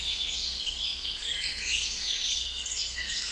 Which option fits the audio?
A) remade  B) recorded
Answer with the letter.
A